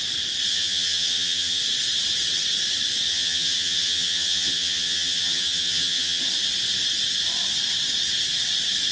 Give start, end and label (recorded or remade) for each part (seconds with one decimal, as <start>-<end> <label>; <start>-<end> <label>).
0.0-0.5 recorded; 0.5-1.6 remade; 1.6-3.1 recorded; 3.1-6.2 remade; 6.2-8.9 recorded